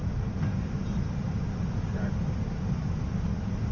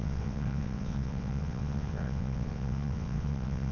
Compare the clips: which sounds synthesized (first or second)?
second